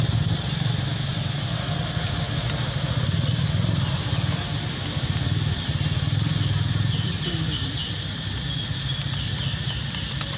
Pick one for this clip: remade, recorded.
recorded